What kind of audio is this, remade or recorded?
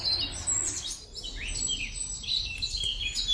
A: recorded